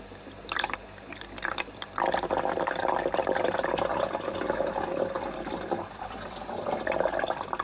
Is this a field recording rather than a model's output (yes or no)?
no